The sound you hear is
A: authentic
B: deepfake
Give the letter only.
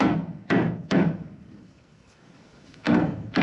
B